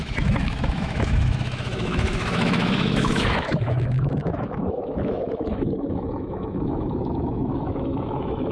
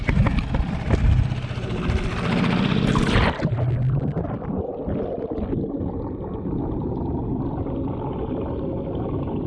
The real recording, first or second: second